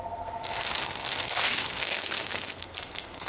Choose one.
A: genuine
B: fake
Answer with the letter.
B